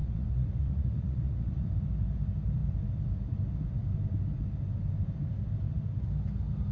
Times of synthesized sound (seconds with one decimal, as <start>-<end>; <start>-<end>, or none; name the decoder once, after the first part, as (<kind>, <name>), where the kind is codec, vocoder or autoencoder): 0.0-1.7 (vocoder, Vocos)